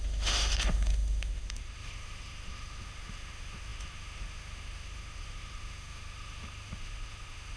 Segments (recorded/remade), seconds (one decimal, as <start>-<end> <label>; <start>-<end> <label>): 0.0-7.6 remade